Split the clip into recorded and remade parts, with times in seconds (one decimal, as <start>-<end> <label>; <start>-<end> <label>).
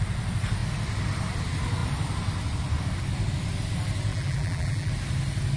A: 0.0-4.1 recorded; 4.1-4.9 remade; 4.9-5.6 recorded